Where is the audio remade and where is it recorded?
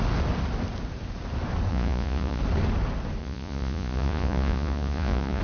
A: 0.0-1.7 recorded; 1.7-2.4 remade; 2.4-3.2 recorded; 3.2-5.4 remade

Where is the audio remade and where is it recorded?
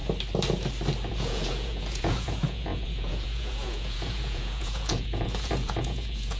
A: 0.0-1.1 recorded; 1.1-6.4 remade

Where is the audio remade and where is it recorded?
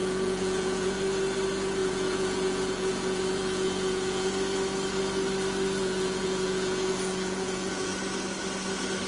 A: 0.0-0.9 remade; 0.9-1.8 recorded; 1.8-4.3 remade; 4.3-5.8 recorded; 5.8-7.9 remade; 7.9-9.1 recorded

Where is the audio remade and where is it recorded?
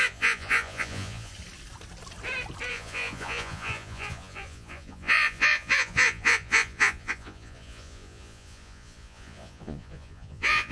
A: 0.0-1.3 remade; 1.3-2.7 recorded; 2.7-10.7 remade